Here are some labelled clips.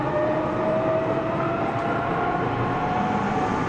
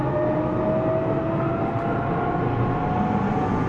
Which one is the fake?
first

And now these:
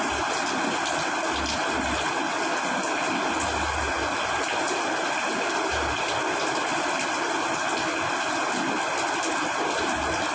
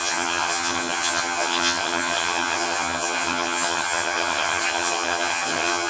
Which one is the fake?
second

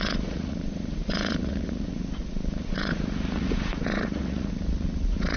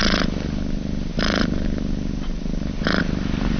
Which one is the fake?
first